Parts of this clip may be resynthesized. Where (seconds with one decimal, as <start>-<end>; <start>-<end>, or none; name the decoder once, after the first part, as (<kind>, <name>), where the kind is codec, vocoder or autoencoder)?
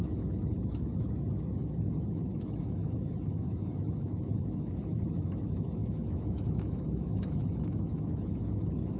0.0-9.0 (autoencoder, DAC-VAE)